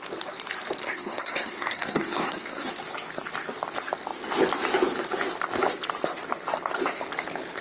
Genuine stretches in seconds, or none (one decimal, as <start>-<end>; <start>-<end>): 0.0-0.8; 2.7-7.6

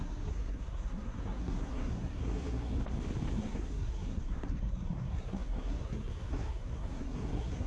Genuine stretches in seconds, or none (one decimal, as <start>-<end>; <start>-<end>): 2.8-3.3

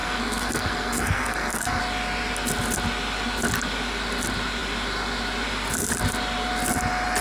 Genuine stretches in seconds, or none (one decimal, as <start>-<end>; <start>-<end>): 1.8-7.2

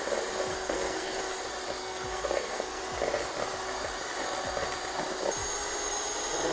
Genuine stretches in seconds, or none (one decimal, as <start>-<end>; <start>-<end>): 0.0-0.5; 1.2-1.8; 2.8-6.5

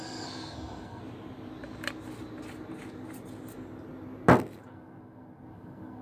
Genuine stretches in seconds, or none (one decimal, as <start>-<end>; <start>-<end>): 1.0-4.6